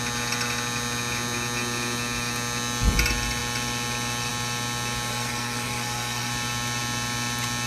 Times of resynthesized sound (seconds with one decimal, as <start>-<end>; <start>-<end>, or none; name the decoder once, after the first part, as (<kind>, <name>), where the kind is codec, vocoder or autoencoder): 5.1-6.3 (codec, SNAC)